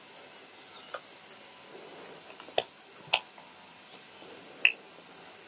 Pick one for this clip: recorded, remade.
recorded